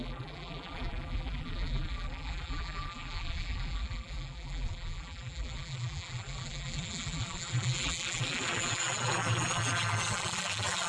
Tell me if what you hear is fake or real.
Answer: fake